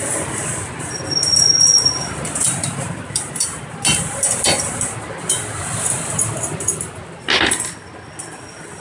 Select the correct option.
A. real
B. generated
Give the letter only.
A